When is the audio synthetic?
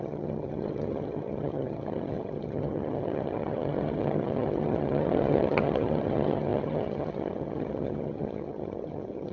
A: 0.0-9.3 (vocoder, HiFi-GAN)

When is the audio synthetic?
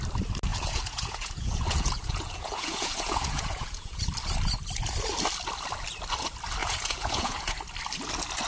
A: 0.5-4.0 (vocoder, Vocos); 6.6-7.6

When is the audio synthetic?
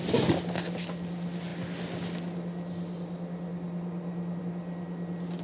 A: none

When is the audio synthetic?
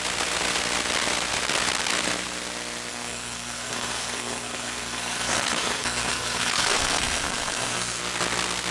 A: 2.9-8.0 (codec, SNAC)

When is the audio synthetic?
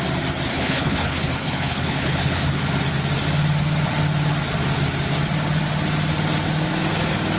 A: 0.5-2.6 (codec, HILCodec)